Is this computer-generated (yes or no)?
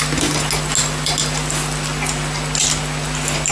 no